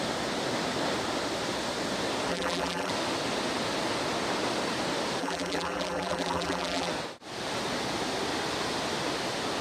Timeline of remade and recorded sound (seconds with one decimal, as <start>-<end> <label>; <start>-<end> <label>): 0.0-2.3 recorded; 2.3-2.9 remade; 2.9-5.2 recorded; 5.2-6.9 remade; 6.9-9.6 recorded